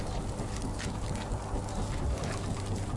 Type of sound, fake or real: real